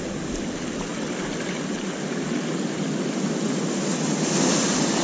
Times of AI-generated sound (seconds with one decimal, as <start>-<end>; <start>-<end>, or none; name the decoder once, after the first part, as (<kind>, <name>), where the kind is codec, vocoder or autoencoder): none